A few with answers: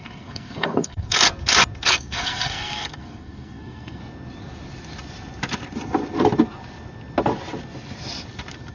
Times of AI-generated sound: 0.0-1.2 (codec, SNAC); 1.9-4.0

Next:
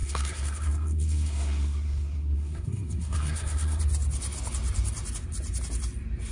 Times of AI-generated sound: 0.0-3.8 (codec, SNAC)

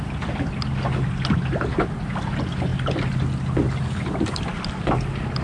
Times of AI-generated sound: none

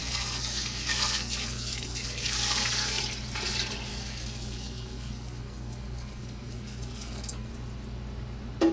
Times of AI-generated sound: 0.0-3.0 (codec, SNAC); 3.9-7.5

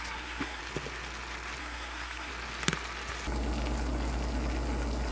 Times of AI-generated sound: 0.0-0.6 (codec, SNAC); 1.6-2.3

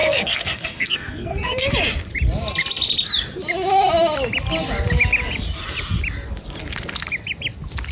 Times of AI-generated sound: 0.0-1.7 (codec, SNAC)